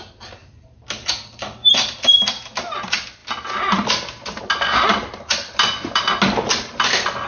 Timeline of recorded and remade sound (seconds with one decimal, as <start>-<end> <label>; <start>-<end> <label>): 0.0-0.4 recorded; 0.4-2.1 remade; 2.1-4.9 recorded; 4.9-6.0 remade; 6.0-7.3 recorded